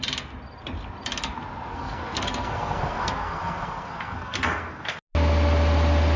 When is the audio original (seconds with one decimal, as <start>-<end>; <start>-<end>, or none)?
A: 0.0-1.7; 5.0-6.2

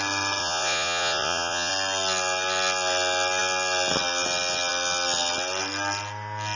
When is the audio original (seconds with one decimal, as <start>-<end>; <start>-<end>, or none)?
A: 0.0-0.4; 1.7-6.6

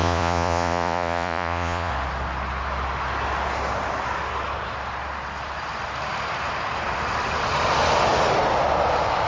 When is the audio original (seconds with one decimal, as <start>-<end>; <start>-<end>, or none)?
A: 1.9-9.3